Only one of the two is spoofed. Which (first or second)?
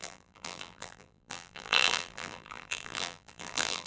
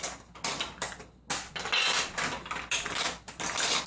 first